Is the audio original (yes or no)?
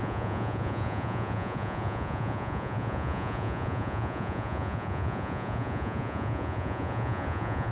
no